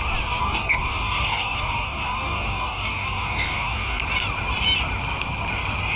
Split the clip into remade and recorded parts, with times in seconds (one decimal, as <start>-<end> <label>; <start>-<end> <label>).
0.0-0.4 recorded; 0.4-4.0 remade; 4.0-6.0 recorded